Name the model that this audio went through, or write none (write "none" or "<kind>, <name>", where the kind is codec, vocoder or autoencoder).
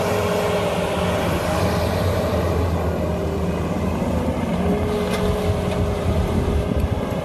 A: none